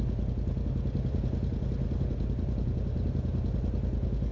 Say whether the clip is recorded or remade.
recorded